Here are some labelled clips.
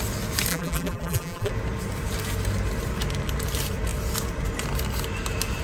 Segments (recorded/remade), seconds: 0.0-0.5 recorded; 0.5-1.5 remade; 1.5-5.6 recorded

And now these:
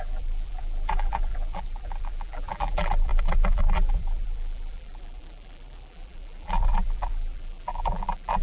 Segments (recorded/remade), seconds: 0.0-8.4 remade